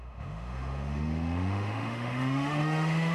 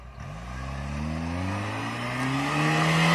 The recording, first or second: second